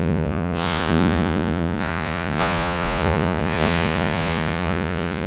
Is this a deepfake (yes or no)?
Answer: yes